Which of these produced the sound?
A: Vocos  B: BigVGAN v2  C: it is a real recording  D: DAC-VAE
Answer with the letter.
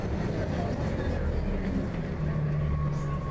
C